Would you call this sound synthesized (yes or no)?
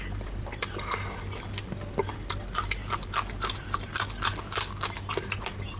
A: yes